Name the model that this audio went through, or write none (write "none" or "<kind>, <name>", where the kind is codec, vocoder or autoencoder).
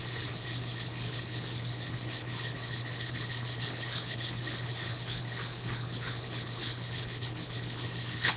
codec, HILCodec